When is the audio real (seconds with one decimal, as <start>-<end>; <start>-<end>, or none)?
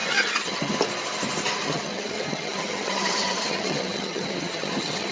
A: 0.7-1.6